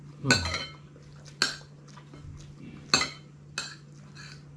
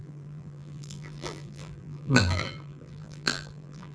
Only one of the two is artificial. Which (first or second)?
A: second